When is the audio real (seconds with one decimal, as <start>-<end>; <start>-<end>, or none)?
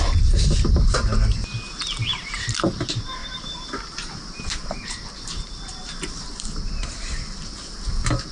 0.0-3.2; 7.0-8.3